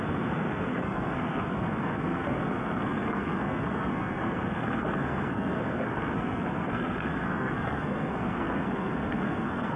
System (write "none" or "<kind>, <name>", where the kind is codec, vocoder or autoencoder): codec, SNAC